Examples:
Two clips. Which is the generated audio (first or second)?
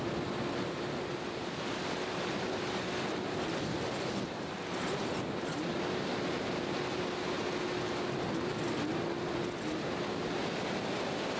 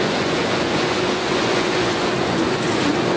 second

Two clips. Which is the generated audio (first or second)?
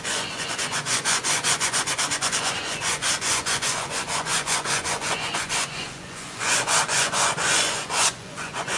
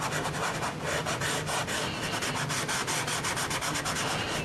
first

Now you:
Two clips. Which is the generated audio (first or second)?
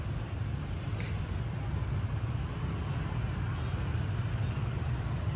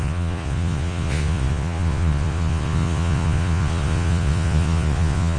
second